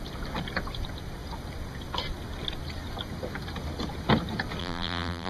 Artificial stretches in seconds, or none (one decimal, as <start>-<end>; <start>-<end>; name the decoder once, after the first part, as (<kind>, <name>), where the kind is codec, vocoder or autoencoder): 4.6-5.3 (vocoder, BigVGAN v2)